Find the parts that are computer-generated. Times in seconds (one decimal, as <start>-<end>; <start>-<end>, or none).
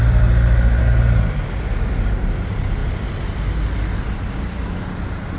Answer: none